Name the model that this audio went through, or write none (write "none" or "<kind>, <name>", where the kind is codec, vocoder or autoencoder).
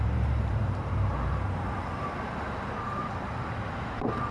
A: vocoder, BigVGAN v2